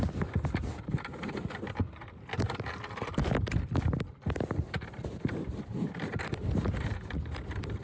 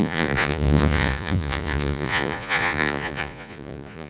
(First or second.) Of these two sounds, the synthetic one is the second